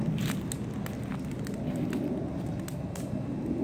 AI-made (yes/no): no